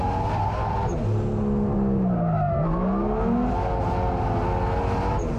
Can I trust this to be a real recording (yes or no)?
yes